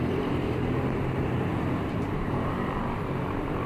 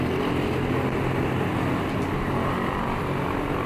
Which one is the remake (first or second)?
first